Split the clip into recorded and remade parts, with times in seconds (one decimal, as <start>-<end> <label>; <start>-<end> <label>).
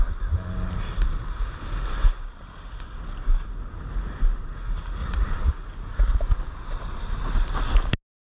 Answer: 0.0-5.0 recorded; 5.0-5.5 remade; 5.5-8.3 recorded